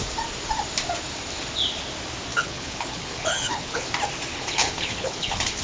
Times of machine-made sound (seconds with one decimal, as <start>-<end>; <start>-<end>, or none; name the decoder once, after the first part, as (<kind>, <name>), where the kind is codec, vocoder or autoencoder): 2.3-3.9 (codec, HILCodec); 4.3-5.6